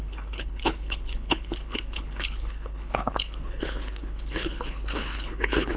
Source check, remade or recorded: remade